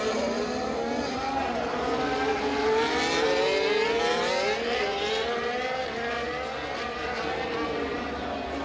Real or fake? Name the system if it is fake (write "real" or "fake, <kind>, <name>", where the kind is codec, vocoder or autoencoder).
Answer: real